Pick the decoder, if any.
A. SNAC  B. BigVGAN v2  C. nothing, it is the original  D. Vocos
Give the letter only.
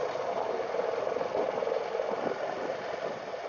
C